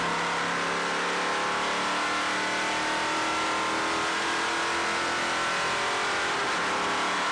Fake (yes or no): yes